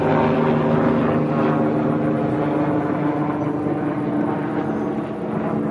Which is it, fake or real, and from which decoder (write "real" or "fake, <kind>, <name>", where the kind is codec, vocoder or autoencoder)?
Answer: real